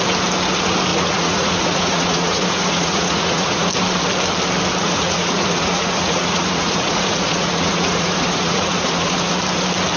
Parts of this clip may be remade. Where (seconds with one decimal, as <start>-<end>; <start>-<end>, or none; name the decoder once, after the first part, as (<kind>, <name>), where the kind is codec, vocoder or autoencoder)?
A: 0.9-3.7 (vocoder, Vocos); 4.8-9.4

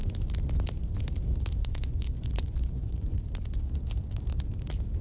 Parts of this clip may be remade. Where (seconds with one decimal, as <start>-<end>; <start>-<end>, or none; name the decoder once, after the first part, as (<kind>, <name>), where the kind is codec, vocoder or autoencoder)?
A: 1.6-3.2 (vocoder, Vocos)

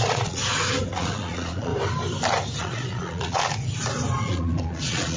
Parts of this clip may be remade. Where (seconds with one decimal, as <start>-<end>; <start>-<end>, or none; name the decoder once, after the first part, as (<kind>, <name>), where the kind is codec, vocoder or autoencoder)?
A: 0.0-0.4 (vocoder, Vocos); 0.9-1.7; 2.6-3.4; 4.2-5.2

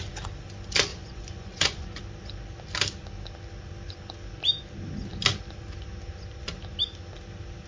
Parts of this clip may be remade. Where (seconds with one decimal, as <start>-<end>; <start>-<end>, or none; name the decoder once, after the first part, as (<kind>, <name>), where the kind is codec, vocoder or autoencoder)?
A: 0.9-2.0 (vocoder, Vocos)

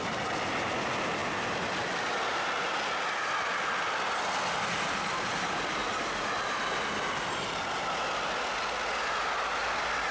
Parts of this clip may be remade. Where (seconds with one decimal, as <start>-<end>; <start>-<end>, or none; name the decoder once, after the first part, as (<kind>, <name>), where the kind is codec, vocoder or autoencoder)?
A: none

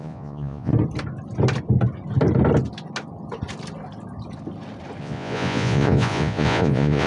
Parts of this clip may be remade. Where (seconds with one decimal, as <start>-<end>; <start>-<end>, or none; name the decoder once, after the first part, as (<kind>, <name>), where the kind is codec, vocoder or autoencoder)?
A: 0.0-0.7 (vocoder, Vocos); 5.0-7.1

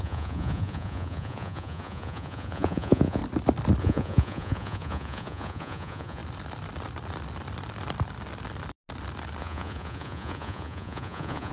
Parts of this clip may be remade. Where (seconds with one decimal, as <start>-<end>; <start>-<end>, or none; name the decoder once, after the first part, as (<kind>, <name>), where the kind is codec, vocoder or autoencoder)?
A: 0.0-3.2 (vocoder, Vocos); 3.8-6.2; 9.4-11.5

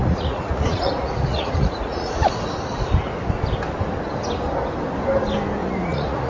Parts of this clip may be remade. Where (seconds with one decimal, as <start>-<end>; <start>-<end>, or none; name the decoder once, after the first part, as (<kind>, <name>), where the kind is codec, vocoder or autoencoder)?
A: 0.0-2.4 (vocoder, Vocos); 5.6-6.3